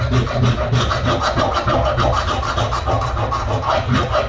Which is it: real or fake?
real